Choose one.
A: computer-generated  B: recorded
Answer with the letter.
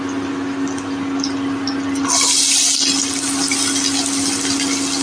B